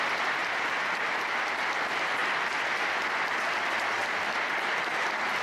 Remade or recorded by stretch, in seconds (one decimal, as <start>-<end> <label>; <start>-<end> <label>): 0.0-0.4 remade; 0.4-1.5 recorded; 1.5-4.0 remade; 4.0-4.5 recorded; 4.5-5.4 remade